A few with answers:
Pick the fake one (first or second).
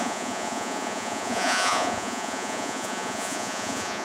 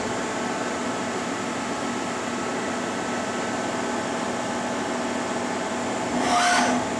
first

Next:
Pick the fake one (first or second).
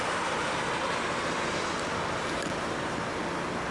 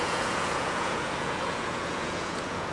second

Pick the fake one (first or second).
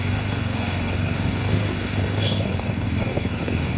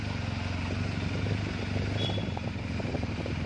first